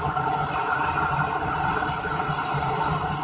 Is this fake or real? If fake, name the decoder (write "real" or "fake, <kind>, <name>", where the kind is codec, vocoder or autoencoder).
real